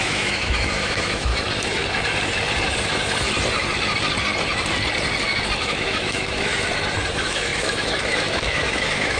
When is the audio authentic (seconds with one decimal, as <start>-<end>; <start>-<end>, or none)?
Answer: 1.3-5.6; 6.5-7.1

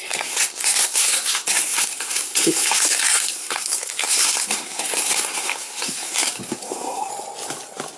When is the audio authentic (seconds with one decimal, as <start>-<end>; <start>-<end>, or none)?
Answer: 7.1-8.0

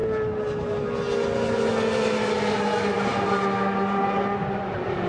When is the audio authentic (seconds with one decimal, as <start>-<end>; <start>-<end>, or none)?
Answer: 0.0-5.1

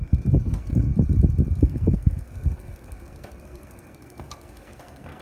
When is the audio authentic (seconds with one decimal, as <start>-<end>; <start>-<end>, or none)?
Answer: 0.9-1.6